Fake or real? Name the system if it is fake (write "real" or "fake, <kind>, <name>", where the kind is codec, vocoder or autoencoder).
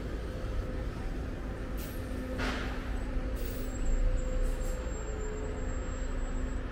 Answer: real